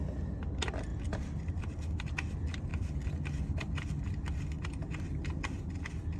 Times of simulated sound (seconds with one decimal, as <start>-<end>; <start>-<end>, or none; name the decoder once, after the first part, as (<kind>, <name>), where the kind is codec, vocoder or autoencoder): none